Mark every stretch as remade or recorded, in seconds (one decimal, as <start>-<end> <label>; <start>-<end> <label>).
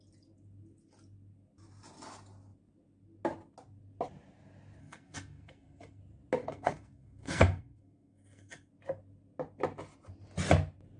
0.0-4.8 recorded; 4.8-6.0 remade; 6.0-6.4 recorded; 6.4-8.7 remade; 8.7-11.0 recorded